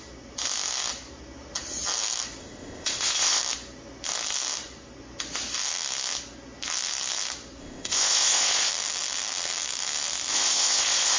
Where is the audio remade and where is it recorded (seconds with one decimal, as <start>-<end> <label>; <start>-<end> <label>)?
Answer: 0.0-2.4 recorded; 2.4-3.4 remade; 3.4-7.6 recorded; 7.6-8.7 remade; 8.7-10.3 recorded; 10.3-11.2 remade